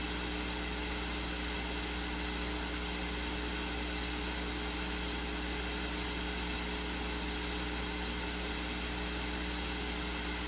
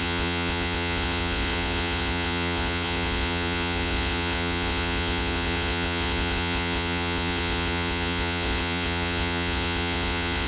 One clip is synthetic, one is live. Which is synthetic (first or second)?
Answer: second